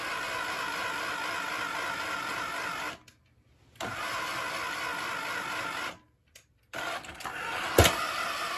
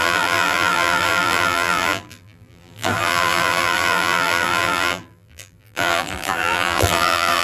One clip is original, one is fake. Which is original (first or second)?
first